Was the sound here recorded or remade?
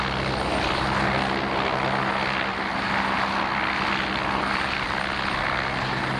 recorded